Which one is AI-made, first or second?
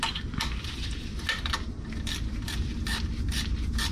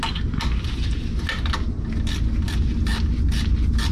first